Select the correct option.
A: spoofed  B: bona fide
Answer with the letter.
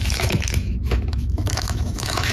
A